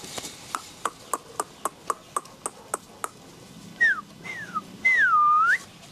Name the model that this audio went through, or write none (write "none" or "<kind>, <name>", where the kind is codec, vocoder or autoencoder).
none